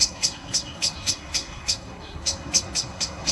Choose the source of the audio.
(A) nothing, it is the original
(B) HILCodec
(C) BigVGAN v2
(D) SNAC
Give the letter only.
D